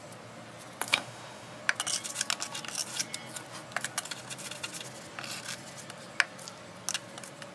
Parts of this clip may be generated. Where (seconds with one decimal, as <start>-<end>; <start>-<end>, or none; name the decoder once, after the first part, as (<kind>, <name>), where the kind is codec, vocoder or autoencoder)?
0.9-1.6 (autoencoder, DAC-VAE)